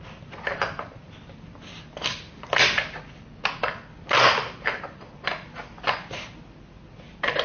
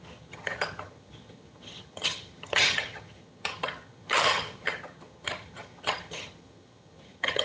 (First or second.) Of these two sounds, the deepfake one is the second